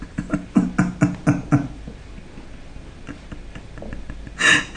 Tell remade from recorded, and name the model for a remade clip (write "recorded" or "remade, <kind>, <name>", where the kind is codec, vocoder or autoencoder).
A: recorded